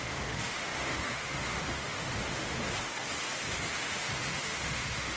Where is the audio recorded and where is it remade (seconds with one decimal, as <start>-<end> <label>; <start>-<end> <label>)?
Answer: 0.0-2.6 remade; 2.6-3.8 recorded; 3.8-5.2 remade